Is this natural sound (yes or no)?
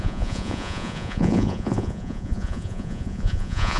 no